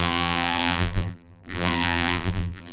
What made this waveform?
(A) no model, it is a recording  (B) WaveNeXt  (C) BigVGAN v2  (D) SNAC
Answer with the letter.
C